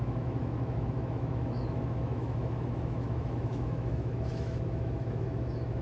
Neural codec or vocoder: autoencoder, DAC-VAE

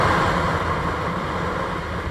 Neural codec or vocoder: none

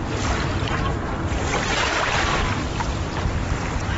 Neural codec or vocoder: none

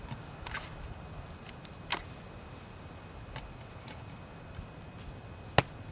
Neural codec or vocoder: none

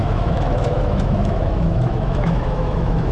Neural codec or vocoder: autoencoder, DAC-VAE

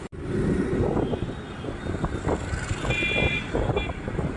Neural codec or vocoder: none